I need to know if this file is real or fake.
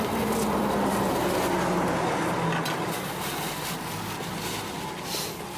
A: real